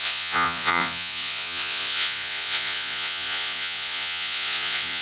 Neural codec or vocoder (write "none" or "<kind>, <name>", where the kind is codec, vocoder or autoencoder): vocoder, Vocos